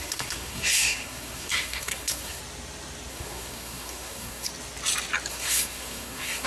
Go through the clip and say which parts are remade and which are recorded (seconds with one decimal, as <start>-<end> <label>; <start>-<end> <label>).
0.0-2.4 remade; 2.4-3.1 recorded; 3.1-4.5 remade; 4.5-5.3 recorded; 5.3-6.5 remade